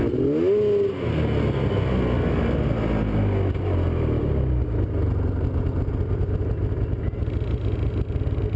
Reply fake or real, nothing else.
real